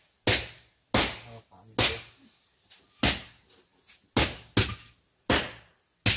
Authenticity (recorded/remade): recorded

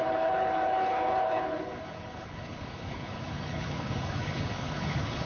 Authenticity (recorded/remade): remade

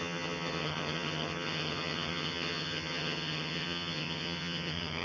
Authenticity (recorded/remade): remade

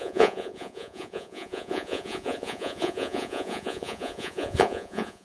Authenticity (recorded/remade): remade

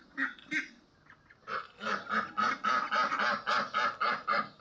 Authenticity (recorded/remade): recorded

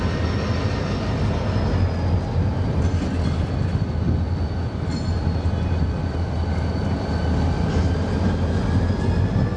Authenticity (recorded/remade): recorded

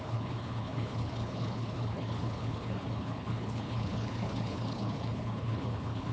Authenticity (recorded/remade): remade